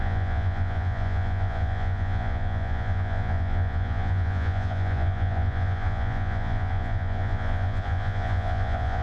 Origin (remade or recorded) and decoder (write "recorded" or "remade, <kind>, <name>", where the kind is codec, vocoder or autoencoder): remade, vocoder, Vocos